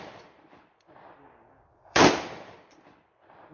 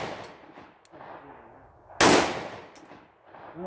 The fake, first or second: first